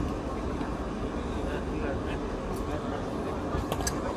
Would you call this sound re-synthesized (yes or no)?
no